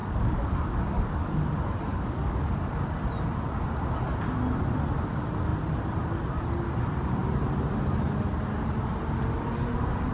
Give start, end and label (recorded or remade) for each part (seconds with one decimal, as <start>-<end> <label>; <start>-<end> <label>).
0.0-1.4 remade; 1.4-1.9 recorded; 1.9-2.6 remade; 2.6-10.1 recorded